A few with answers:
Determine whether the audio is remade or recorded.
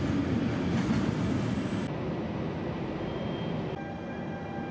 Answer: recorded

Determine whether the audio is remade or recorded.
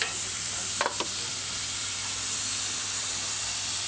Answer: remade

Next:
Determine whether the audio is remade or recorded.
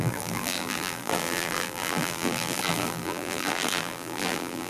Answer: remade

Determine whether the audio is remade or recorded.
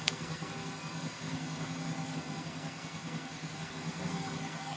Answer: remade